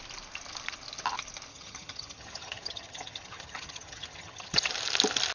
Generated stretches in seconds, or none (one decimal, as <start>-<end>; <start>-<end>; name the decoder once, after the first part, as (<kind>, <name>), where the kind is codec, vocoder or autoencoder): 1.5-4.7 (vocoder, HiFi-GAN)